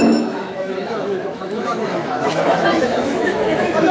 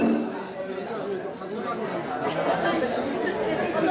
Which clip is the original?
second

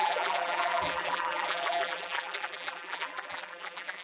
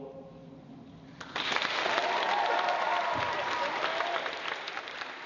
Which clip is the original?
second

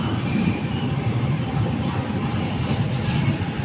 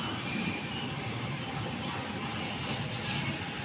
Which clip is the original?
second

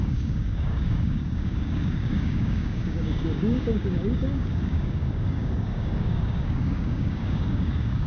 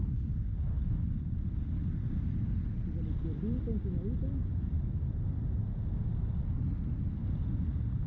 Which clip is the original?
second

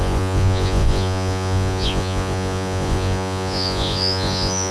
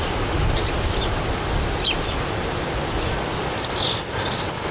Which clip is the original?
second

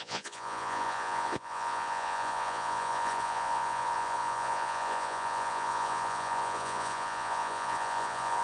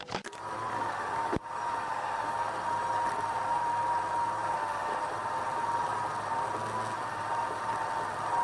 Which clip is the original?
second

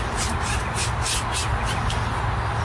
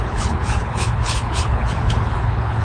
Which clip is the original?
first